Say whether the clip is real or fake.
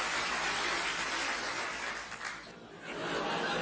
real